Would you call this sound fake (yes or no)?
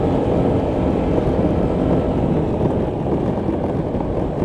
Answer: no